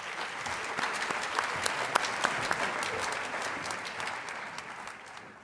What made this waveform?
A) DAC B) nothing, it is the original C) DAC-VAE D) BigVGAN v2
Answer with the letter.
B